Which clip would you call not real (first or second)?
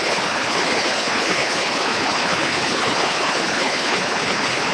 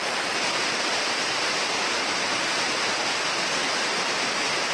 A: first